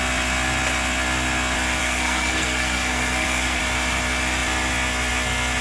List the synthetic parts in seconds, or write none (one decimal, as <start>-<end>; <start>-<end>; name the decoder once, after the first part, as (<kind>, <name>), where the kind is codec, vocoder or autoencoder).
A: 1.8-3.6 (codec, SNAC)

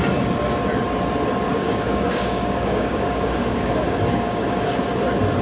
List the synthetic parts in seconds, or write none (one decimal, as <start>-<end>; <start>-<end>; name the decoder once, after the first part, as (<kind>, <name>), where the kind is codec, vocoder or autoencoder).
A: 1.5-4.7 (codec, DAC)

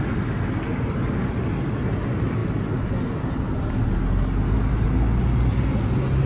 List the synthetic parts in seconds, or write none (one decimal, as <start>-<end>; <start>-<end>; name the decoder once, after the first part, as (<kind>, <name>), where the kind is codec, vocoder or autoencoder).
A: none

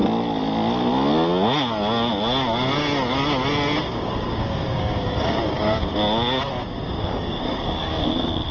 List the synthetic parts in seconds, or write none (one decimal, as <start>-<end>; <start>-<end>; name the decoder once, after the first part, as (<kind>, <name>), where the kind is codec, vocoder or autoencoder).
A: 3.9-6.0 (codec, DAC); 6.6-8.5

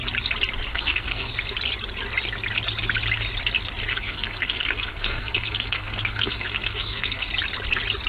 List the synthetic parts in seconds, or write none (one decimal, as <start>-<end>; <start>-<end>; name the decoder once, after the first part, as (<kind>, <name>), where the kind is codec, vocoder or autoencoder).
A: 0.7-1.3 (codec, SNAC); 3.9-7.3